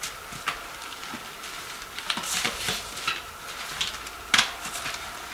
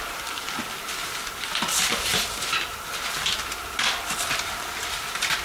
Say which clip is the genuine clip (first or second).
first